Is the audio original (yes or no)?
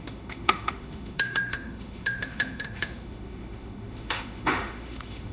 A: no